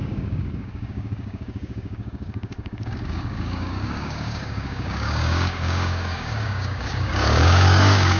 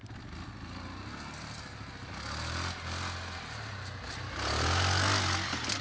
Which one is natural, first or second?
second